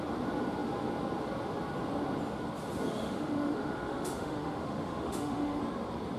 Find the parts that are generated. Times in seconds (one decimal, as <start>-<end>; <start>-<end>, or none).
2.9-5.6